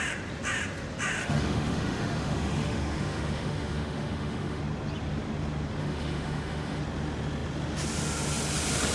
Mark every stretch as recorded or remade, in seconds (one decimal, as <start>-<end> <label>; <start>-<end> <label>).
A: 0.0-1.2 recorded; 1.2-4.6 remade; 4.6-5.8 recorded; 5.8-6.8 remade; 6.8-8.9 recorded